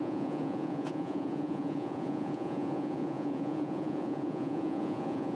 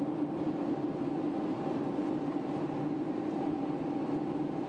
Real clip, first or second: second